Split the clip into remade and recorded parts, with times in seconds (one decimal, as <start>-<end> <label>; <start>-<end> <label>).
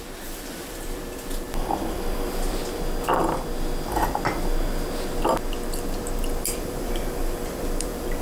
0.0-2.6 remade; 2.6-6.6 recorded; 6.6-8.2 remade